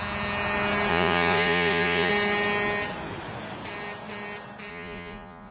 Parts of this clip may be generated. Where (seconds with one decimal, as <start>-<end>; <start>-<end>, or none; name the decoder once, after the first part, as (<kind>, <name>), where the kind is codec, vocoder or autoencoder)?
0.9-2.1 (vocoder, Vocos); 4.7-5.5